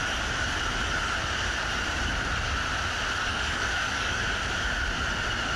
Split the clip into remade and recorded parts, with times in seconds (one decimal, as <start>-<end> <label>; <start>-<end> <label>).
0.0-3.3 recorded; 3.3-4.2 remade; 4.2-5.6 recorded